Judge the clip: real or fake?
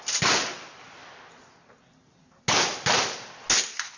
real